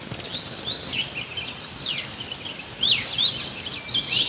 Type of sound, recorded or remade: recorded